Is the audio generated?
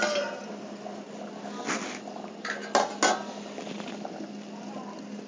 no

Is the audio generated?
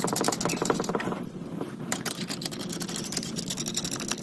no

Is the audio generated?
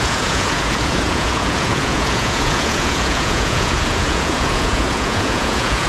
yes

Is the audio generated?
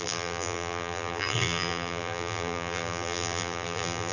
yes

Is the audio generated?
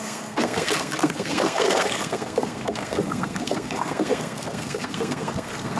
yes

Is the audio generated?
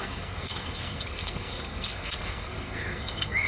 yes